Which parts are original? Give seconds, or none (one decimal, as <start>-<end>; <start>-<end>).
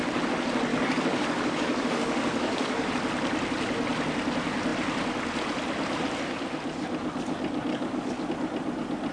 0.0-0.7; 2.9-7.7; 8.3-9.1